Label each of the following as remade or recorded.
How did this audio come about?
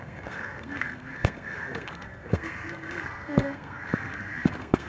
remade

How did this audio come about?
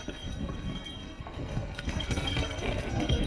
remade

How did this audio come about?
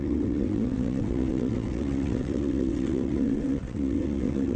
remade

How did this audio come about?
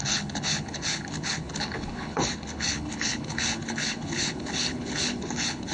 remade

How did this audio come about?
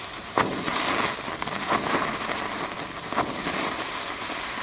recorded